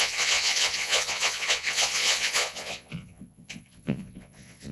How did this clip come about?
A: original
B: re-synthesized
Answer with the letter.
B